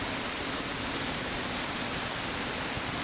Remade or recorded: recorded